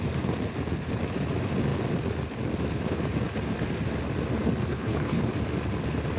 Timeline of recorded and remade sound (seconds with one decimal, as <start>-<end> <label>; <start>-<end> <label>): 0.0-4.7 recorded; 4.7-5.2 remade; 5.2-6.2 recorded